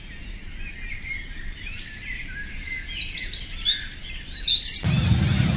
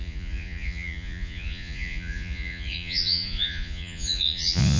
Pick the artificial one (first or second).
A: second